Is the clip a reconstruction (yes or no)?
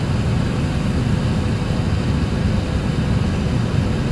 no